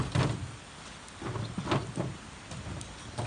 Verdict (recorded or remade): recorded